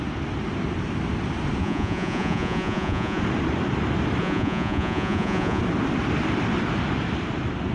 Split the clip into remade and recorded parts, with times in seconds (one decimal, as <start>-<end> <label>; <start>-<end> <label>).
0.0-1.6 recorded; 1.6-3.2 remade; 3.2-4.2 recorded; 4.2-5.6 remade; 5.6-7.7 recorded